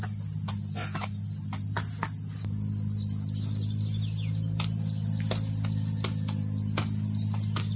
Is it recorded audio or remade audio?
recorded